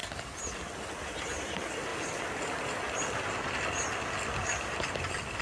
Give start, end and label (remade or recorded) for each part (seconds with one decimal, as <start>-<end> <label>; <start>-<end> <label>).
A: 0.0-1.0 recorded; 1.0-1.9 remade; 1.9-5.4 recorded